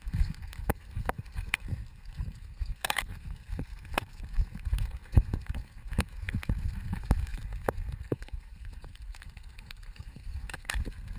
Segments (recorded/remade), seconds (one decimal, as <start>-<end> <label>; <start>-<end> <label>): 0.0-11.2 remade

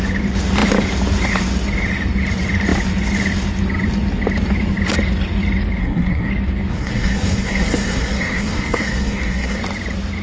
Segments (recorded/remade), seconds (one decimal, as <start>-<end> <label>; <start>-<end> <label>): 0.0-5.8 recorded; 5.8-6.3 remade; 6.3-6.7 recorded; 6.7-9.6 remade; 9.6-10.2 recorded

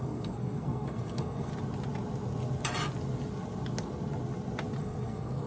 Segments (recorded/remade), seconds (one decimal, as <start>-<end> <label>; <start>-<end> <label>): 0.0-1.5 remade; 1.5-4.8 recorded; 4.8-5.5 remade

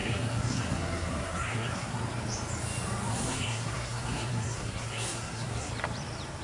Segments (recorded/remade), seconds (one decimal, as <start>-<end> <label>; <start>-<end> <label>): 0.0-2.0 remade; 2.0-3.1 recorded; 3.1-5.7 remade; 5.7-6.4 recorded

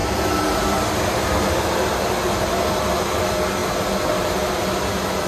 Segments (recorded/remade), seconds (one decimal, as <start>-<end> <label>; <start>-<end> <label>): 0.0-5.3 recorded

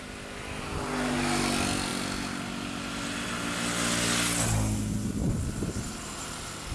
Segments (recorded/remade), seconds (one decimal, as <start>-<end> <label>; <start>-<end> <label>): 0.0-6.7 recorded

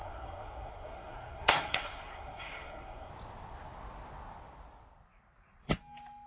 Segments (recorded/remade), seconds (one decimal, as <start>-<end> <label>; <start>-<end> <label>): 0.0-3.1 remade; 3.1-6.3 recorded

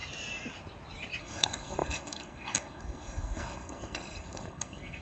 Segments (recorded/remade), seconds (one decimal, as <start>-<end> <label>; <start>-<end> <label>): 0.0-1.2 recorded; 1.2-5.0 remade